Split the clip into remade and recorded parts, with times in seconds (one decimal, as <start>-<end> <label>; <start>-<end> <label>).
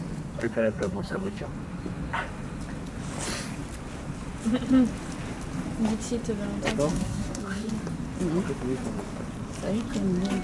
0.0-0.4 recorded; 0.4-1.4 remade; 1.4-6.9 recorded; 6.9-7.7 remade; 7.7-10.4 recorded